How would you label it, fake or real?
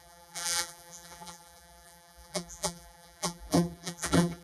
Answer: fake